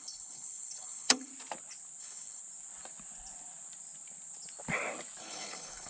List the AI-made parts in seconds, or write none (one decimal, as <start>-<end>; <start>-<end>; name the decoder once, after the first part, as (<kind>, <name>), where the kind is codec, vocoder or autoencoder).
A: 0.0-1.3 (codec, HILCodec); 2.0-2.4; 5.2-5.9